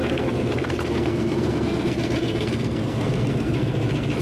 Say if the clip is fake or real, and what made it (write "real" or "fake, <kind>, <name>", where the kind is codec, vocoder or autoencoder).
fake, codec, SNAC